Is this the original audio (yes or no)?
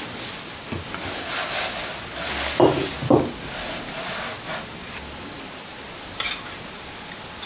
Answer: yes